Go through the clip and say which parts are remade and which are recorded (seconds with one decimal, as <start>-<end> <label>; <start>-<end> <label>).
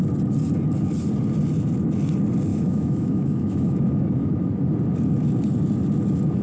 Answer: 0.0-2.5 recorded; 2.5-4.4 remade; 4.4-6.4 recorded